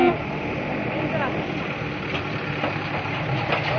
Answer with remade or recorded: recorded